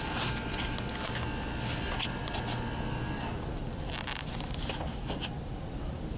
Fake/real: real